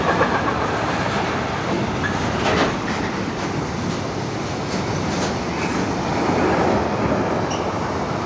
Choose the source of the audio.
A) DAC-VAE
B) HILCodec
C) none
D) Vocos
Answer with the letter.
C